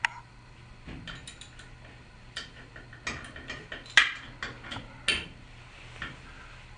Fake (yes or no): no